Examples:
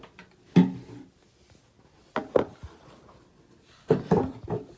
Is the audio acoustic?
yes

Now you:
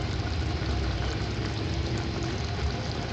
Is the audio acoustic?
yes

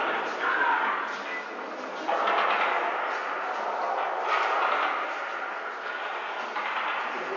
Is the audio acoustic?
yes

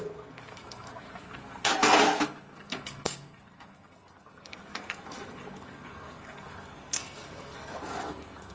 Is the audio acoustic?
no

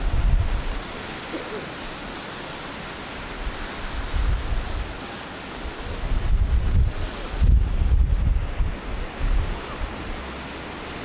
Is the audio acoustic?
yes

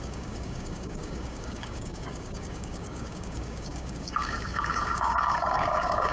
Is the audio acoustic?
no